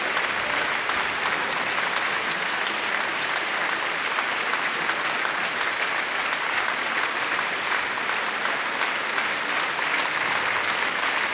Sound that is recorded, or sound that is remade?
remade